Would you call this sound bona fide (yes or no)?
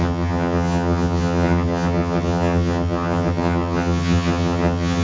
no